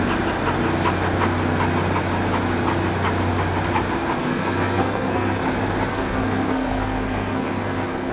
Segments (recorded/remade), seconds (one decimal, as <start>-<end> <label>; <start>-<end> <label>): 0.0-4.2 recorded; 4.2-5.4 remade; 5.4-5.9 recorded; 5.9-8.1 remade